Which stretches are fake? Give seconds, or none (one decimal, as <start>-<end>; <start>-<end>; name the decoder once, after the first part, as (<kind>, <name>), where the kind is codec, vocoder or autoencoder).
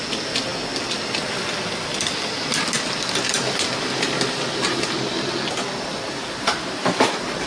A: none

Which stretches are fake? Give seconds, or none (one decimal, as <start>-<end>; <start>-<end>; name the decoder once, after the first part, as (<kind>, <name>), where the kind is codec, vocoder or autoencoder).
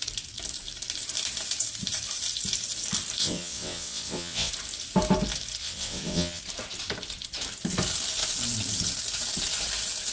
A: 3.2-4.5 (vocoder, WaveNeXt); 5.6-6.4